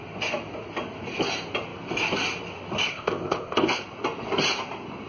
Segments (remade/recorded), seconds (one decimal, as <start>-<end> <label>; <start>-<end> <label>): 0.0-2.9 recorded; 2.9-3.8 remade; 3.8-5.1 recorded